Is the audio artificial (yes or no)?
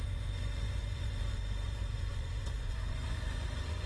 yes